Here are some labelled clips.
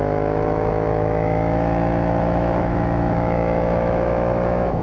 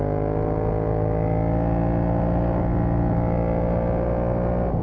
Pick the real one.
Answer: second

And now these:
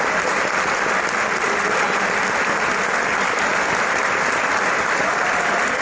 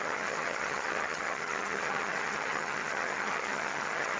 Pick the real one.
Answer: first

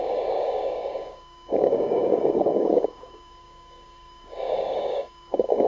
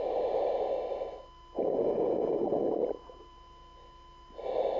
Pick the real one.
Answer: second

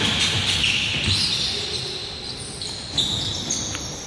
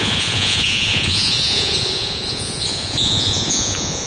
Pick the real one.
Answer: first